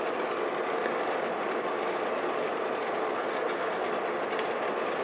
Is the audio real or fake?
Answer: real